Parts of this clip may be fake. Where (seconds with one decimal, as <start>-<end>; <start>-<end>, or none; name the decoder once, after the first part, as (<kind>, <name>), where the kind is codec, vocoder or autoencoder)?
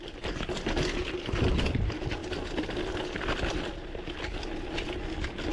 none